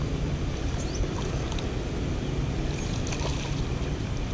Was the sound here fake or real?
real